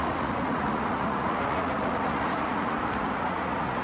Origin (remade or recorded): remade